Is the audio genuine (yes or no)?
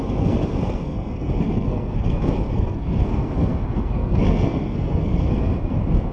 no